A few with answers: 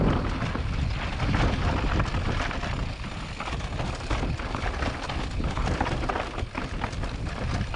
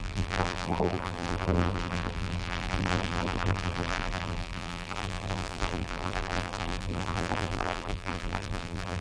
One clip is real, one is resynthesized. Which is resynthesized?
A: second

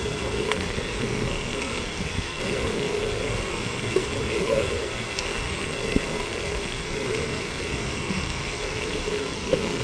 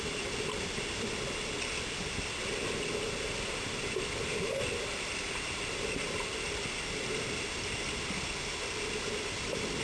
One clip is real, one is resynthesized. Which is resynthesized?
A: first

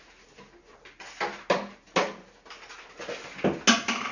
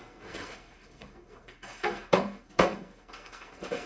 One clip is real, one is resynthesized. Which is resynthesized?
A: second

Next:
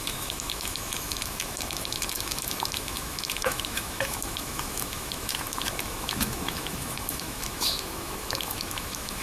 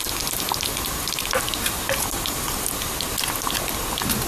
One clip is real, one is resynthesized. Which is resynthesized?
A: first